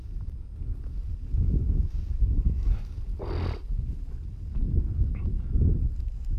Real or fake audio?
real